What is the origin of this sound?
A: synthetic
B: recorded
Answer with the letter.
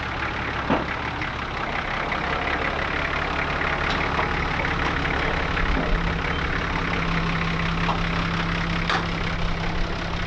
B